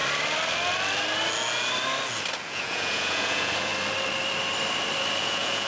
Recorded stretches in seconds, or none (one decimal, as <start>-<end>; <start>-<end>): 0.0-2.4; 3.7-5.2